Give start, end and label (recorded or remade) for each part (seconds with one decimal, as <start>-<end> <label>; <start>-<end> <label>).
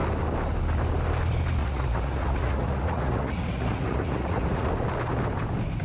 0.0-1.6 recorded; 1.6-4.7 remade; 4.7-5.8 recorded